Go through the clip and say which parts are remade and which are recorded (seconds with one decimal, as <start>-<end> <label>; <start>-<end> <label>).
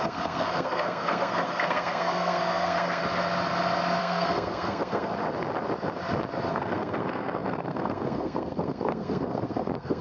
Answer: 0.0-3.0 remade; 3.0-4.0 recorded; 4.0-5.1 remade; 5.1-6.5 recorded; 6.5-10.0 remade